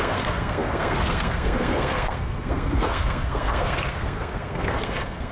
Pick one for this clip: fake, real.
fake